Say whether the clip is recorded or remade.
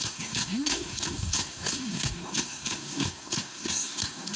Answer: remade